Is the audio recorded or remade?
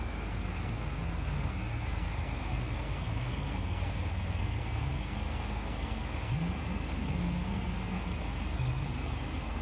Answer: remade